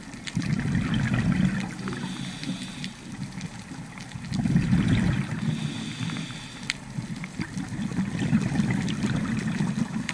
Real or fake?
real